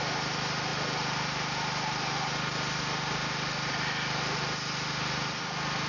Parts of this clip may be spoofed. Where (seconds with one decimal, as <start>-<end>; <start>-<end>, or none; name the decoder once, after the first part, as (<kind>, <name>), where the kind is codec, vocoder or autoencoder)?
none